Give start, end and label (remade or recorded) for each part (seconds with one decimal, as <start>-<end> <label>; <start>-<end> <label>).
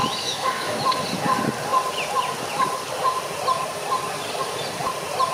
0.0-0.8 remade; 0.8-5.3 recorded